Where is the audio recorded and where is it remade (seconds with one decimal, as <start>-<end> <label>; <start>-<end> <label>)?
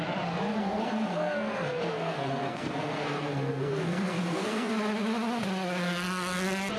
0.0-0.6 recorded; 0.6-4.7 remade; 4.7-6.8 recorded